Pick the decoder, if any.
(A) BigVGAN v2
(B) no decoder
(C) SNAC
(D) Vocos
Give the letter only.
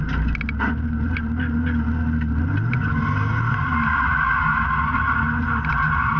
B